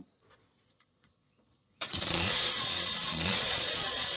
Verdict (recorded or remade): remade